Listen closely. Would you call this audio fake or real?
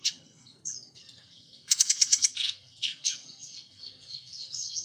fake